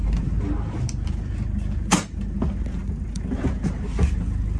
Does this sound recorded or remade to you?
recorded